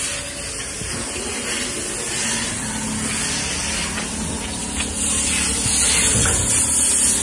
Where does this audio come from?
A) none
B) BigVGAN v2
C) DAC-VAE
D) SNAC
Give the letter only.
A